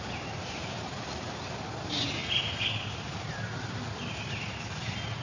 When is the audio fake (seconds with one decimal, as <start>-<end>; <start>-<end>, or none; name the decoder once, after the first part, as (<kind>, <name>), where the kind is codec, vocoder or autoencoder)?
none